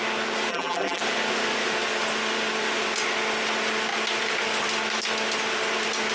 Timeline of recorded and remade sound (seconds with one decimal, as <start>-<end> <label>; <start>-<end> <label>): 0.0-0.5 recorded; 0.5-1.0 remade; 1.0-6.1 recorded